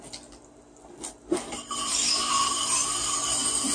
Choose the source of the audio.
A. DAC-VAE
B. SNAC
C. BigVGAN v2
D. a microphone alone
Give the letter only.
D